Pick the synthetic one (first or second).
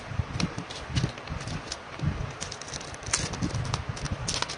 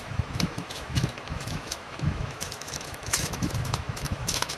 second